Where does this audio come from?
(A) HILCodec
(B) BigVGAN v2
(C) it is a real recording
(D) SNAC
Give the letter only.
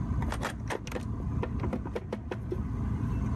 C